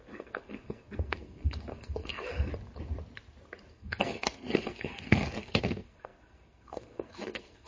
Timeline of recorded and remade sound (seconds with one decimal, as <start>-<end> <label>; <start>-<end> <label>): 0.0-2.5 remade; 2.5-3.7 recorded; 3.7-7.7 remade